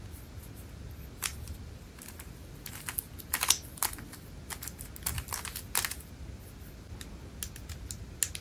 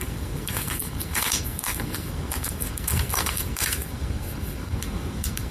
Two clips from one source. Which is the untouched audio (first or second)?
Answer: first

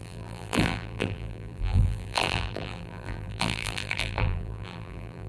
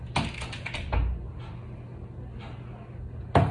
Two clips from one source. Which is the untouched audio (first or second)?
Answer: second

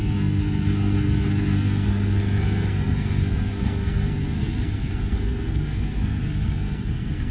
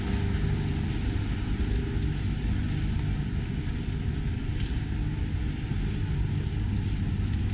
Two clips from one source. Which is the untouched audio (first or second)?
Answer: second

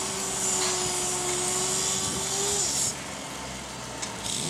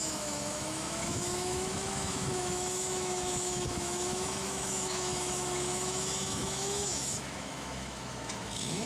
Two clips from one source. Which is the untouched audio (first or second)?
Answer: first